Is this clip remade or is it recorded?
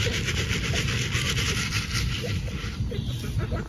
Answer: recorded